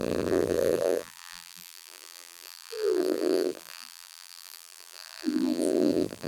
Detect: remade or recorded remade